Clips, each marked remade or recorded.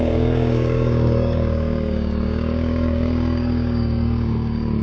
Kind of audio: remade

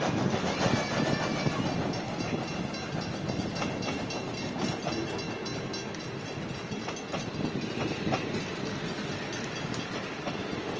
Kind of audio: recorded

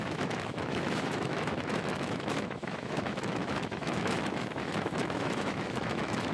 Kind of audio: remade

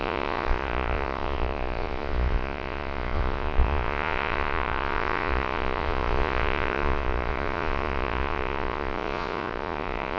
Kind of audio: remade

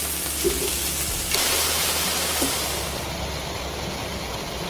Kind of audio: recorded